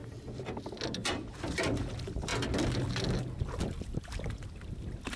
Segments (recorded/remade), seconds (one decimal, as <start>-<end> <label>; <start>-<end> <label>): 0.0-1.1 recorded; 1.1-2.3 remade; 2.3-3.6 recorded; 3.6-5.2 remade